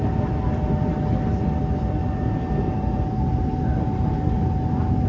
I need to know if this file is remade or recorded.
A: recorded